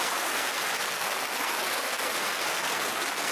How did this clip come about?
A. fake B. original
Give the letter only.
A